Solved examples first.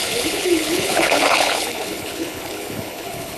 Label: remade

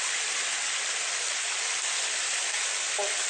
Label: recorded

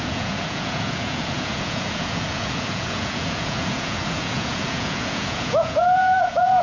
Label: remade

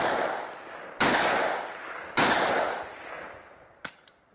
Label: recorded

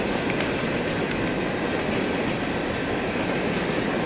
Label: recorded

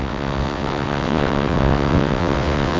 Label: remade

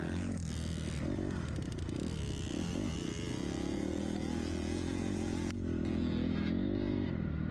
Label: recorded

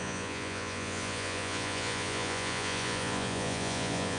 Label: remade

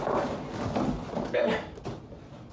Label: recorded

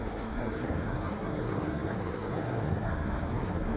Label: remade